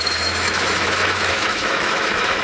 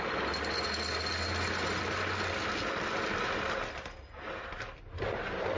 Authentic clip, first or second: second